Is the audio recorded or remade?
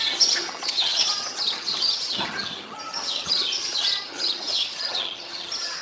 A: remade